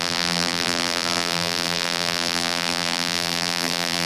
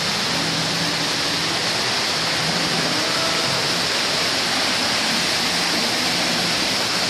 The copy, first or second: first